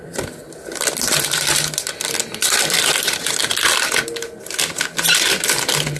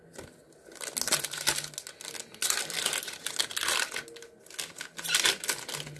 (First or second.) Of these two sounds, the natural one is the second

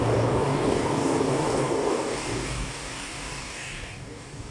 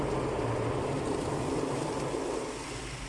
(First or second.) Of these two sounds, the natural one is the second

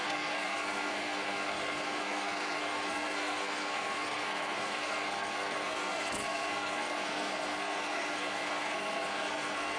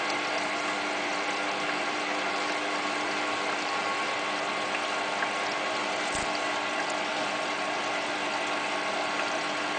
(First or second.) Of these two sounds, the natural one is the second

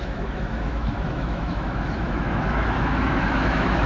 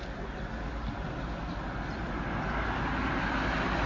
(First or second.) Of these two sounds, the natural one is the second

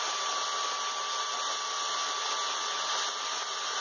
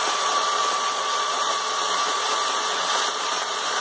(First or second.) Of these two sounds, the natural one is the first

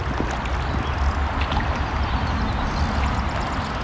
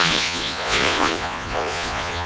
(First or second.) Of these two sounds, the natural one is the first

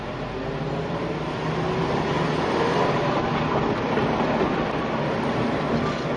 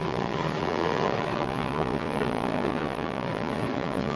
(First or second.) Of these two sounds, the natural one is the first